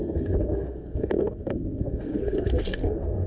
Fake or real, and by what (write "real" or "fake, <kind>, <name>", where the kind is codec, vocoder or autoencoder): fake, codec, SNAC